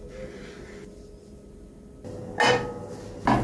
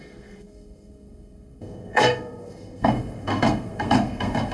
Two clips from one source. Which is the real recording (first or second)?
first